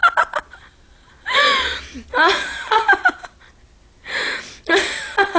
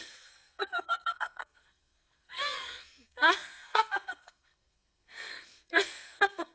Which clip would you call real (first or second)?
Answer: first